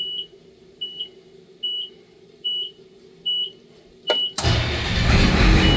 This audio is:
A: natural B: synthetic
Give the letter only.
A